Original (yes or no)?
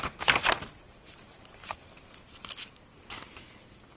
yes